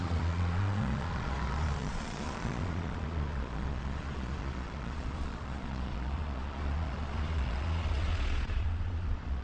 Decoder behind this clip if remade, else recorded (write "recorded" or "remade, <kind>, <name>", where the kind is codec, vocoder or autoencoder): remade, vocoder, Vocos